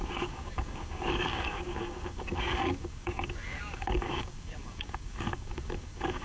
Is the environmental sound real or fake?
fake